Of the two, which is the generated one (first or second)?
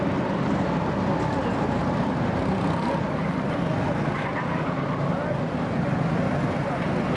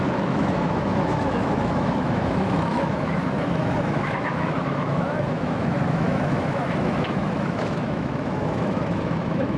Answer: second